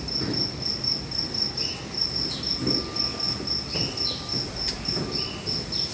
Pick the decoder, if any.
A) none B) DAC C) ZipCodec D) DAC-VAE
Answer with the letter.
A